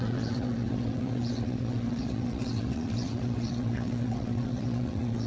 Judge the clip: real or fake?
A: fake